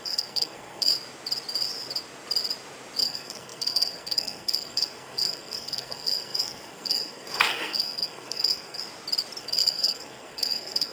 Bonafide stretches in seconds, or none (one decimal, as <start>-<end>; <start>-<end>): 0.9-3.0; 8.8-9.4